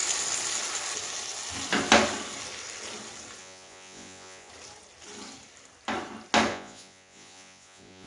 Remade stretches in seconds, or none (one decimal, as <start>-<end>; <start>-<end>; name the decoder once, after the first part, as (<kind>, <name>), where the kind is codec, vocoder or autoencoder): 3.4-4.5 (vocoder, Vocos); 6.5-8.1